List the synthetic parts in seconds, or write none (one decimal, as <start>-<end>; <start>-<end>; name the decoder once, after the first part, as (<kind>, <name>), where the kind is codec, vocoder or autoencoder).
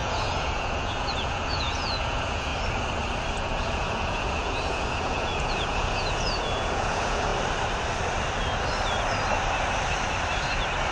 0.0-2.5 (vocoder, Vocos); 3.4-7.3